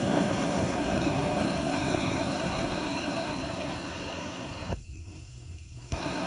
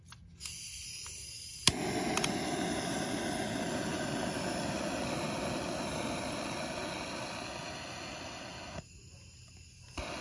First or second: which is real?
second